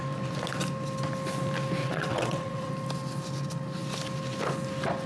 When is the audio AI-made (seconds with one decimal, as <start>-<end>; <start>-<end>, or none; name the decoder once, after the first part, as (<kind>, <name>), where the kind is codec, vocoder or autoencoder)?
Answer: 1.8-2.7 (vocoder, WaveNeXt)